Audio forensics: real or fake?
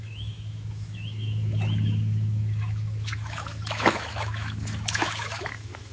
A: fake